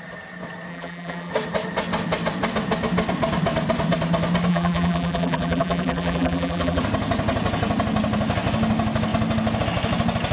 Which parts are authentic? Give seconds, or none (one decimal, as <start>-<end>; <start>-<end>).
0.0-0.7; 1.3-4.5; 6.8-10.3